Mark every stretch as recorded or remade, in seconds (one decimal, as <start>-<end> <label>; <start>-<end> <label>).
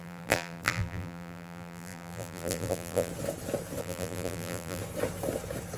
0.0-3.1 remade; 3.1-3.8 recorded; 3.8-4.8 remade; 4.8-5.8 recorded